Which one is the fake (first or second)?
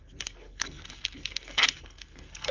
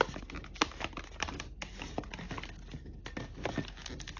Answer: first